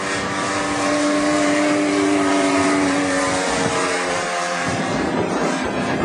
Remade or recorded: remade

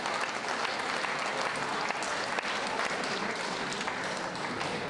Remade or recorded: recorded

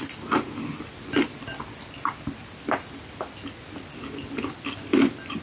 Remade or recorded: recorded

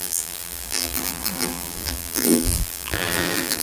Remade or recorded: remade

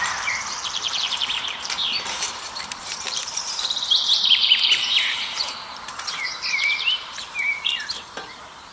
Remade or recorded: remade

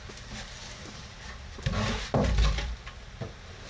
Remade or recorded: recorded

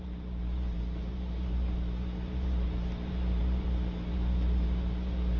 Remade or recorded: remade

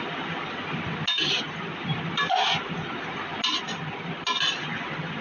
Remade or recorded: recorded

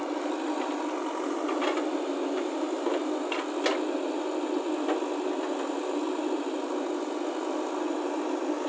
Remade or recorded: recorded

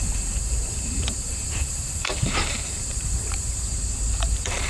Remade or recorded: remade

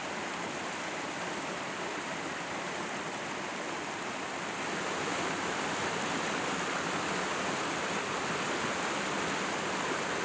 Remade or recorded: recorded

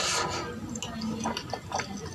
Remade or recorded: recorded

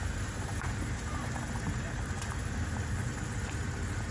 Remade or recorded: remade